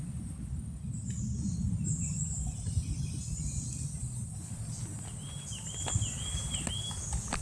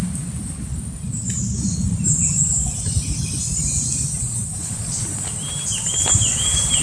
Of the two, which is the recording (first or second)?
first